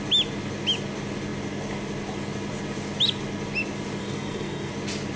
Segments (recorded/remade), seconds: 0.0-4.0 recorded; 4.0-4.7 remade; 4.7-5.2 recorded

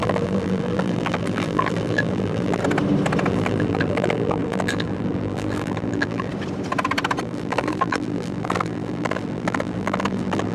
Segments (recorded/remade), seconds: 0.0-2.6 remade; 2.6-3.3 recorded; 3.3-6.3 remade; 6.3-7.2 recorded; 7.2-10.5 remade

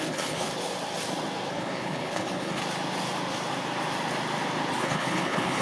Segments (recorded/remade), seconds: 0.0-0.5 remade; 0.5-1.5 recorded; 1.5-2.6 remade; 2.6-4.8 recorded; 4.8-5.6 remade

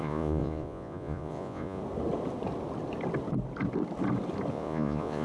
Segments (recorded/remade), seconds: 0.0-1.8 remade; 1.8-4.5 recorded; 4.5-5.2 remade

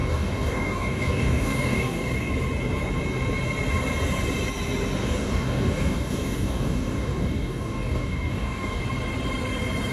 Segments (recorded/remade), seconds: 0.0-2.3 remade; 2.3-5.0 recorded; 5.0-8.8 remade; 8.8-9.9 recorded

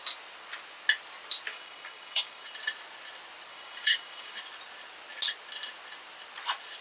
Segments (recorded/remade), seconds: 0.0-1.5 recorded; 1.5-2.5 remade; 2.5-3.5 recorded; 3.5-4.4 remade; 4.4-6.8 recorded

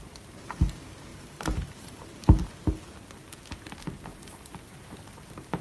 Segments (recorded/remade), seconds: 0.0-1.1 recorded; 1.1-2.1 remade; 2.1-4.1 recorded; 4.1-5.0 remade; 5.0-5.6 recorded